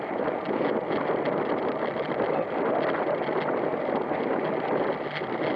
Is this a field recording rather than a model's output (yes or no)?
yes